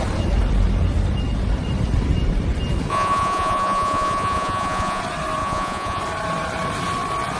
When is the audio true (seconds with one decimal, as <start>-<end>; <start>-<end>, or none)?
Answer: 0.0-2.9; 5.0-5.4; 6.0-7.4